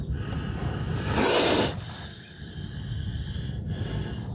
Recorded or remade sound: recorded